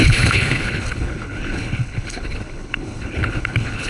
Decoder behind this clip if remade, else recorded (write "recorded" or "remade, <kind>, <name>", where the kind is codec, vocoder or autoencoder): remade, codec, HILCodec